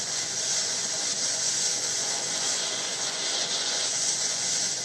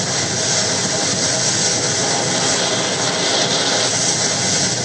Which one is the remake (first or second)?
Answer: first